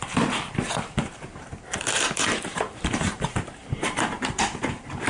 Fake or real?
fake